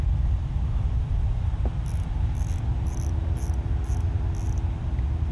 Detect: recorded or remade recorded